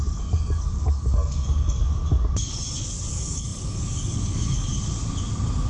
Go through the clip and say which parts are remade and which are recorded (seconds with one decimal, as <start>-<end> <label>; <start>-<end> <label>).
0.0-2.0 remade; 2.0-3.1 recorded; 3.1-4.7 remade; 4.7-5.7 recorded